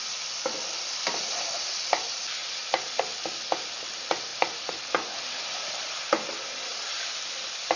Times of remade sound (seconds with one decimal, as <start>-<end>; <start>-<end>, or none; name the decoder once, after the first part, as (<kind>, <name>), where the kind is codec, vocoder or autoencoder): 2.4-3.0 (vocoder, BigVGAN v2); 4.3-7.8